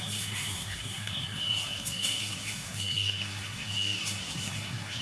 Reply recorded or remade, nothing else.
remade